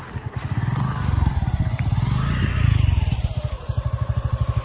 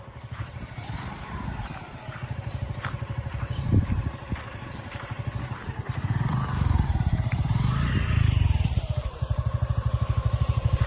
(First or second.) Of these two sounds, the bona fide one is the first